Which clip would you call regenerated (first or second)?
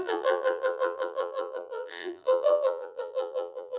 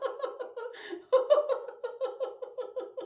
first